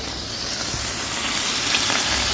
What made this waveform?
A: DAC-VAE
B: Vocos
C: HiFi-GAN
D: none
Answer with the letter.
D